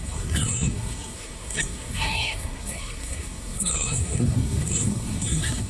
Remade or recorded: remade